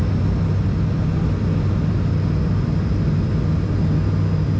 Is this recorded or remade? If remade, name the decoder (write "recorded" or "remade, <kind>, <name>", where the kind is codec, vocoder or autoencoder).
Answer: recorded